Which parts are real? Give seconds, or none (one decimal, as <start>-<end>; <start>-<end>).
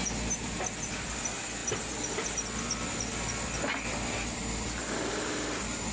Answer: 0.0-5.9